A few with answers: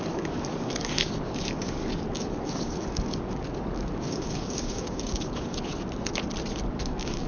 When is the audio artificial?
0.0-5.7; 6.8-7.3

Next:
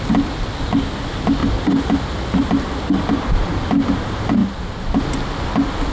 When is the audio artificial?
none